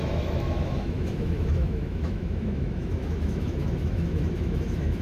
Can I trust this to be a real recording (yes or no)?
no